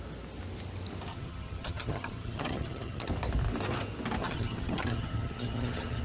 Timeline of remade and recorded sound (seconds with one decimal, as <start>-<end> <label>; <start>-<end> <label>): 0.0-1.1 recorded; 1.1-3.1 remade; 3.1-4.2 recorded; 4.2-6.0 remade